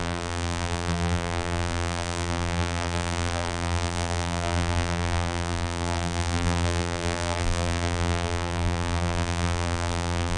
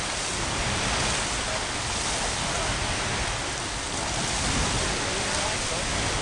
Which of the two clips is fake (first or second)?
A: first